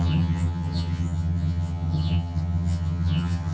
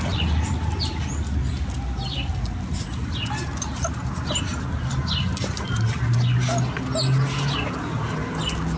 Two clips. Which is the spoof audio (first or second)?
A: first